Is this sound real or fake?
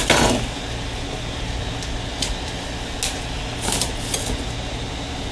real